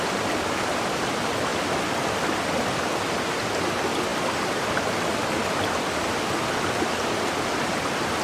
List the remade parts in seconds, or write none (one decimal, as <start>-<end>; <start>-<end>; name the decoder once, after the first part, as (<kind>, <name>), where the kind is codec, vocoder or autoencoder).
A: none